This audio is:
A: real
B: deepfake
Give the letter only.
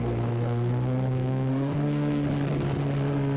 B